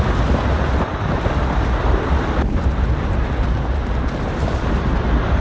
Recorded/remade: recorded